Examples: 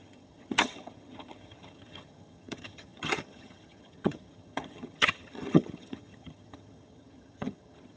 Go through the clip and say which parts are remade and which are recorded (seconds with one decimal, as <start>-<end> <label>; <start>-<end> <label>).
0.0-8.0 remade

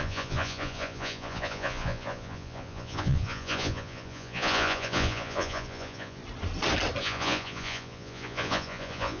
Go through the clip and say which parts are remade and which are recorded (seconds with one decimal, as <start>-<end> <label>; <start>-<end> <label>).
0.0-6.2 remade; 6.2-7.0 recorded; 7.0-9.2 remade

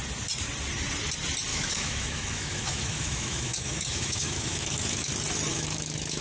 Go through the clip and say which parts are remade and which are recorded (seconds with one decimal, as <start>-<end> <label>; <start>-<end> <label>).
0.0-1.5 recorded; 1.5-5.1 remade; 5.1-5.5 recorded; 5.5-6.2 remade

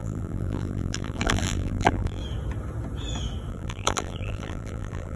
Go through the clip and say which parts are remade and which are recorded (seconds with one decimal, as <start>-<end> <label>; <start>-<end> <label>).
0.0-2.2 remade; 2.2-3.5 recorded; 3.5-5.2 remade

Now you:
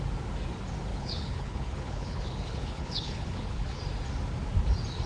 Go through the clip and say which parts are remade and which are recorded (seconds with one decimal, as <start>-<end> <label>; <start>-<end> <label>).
0.0-0.9 recorded; 0.9-3.8 remade; 3.8-5.1 recorded